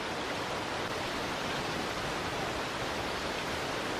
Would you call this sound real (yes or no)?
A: no